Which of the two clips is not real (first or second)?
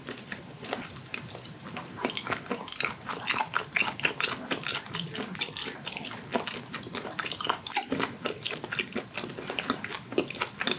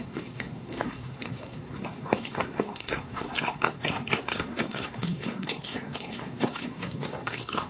second